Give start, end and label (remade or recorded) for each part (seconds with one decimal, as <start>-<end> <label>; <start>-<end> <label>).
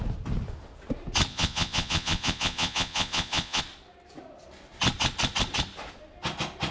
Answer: 0.0-1.3 recorded; 1.3-3.6 remade; 3.6-6.7 recorded